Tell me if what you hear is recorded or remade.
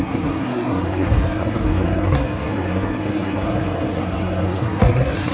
remade